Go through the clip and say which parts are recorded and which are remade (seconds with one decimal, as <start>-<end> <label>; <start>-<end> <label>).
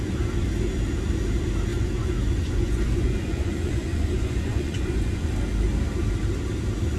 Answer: 0.0-1.7 recorded; 1.7-5.3 remade; 5.3-7.0 recorded